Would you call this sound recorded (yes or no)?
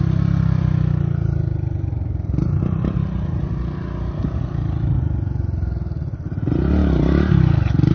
yes